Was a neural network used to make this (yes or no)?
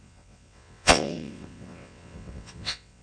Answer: yes